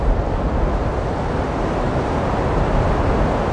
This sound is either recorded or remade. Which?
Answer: recorded